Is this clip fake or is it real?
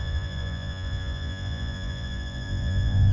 fake